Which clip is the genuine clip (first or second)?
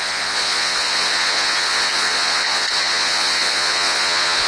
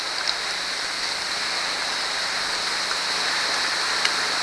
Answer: second